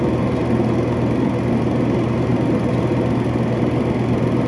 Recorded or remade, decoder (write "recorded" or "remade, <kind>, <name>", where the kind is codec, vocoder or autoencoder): recorded